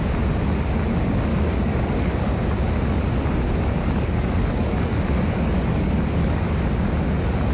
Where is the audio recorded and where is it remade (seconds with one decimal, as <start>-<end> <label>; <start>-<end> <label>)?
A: 0.0-1.3 recorded; 1.3-2.4 remade; 2.4-3.8 recorded; 3.8-6.4 remade; 6.4-7.5 recorded